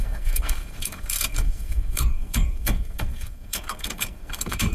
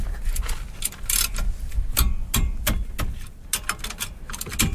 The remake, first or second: first